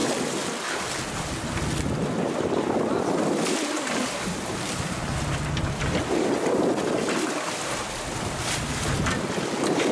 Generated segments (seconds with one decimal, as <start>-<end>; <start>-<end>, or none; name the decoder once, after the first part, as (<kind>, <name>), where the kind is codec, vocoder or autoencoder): none